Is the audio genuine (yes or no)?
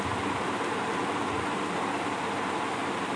yes